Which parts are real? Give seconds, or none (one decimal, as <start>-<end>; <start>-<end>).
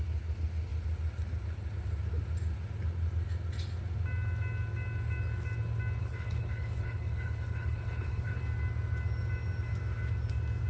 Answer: 0.0-6.0; 8.4-10.7